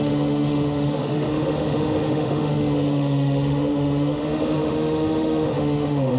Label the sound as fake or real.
fake